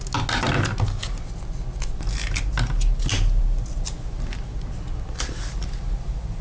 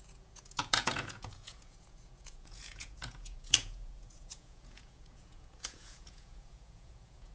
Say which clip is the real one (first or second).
first